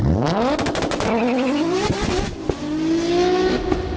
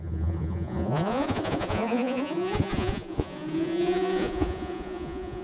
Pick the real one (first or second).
first